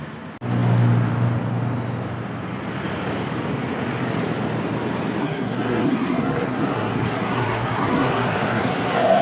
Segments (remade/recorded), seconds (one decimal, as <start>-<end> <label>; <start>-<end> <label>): 0.0-5.2 recorded; 5.2-9.2 remade